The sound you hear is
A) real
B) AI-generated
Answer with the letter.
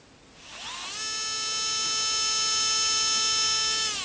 A